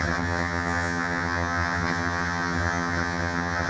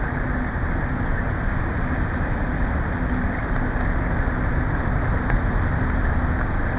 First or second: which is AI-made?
first